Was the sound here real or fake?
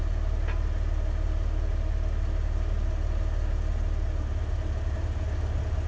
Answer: real